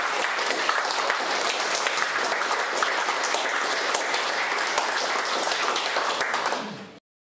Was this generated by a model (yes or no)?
no